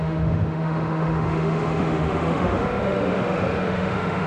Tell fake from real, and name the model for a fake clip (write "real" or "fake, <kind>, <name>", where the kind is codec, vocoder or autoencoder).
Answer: fake, autoencoder, DAC-VAE